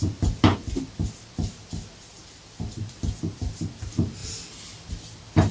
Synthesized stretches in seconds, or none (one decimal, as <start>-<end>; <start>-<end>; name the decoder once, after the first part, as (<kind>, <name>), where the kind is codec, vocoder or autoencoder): none